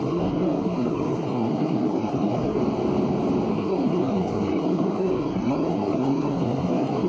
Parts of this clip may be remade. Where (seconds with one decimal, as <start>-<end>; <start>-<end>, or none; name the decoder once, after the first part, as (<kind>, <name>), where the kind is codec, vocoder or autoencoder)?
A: 0.0-2.6 (codec, SNAC); 3.5-7.1